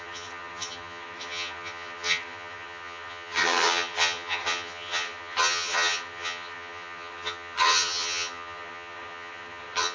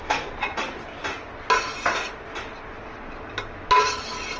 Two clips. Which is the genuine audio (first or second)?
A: second